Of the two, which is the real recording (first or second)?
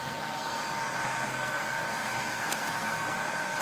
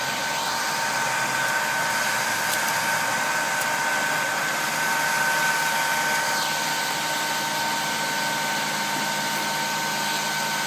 second